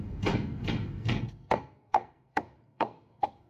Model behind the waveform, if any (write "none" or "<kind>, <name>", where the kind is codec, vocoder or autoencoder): codec, SNAC